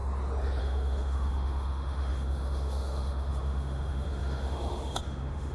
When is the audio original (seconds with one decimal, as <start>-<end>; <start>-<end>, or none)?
0.0-0.6